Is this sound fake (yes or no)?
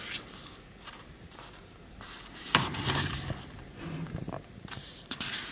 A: yes